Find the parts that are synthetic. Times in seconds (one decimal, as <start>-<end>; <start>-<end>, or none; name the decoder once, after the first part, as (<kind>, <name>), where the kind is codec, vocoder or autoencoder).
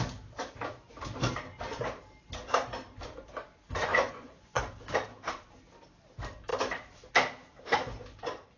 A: 3.9-4.6 (vocoder, Vocos)